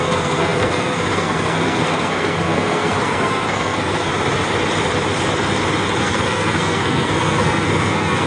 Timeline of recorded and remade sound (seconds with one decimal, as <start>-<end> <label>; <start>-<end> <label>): 0.0-4.1 remade; 4.1-6.0 recorded; 6.0-8.3 remade